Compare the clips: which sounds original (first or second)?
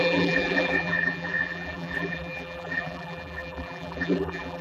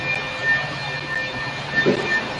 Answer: second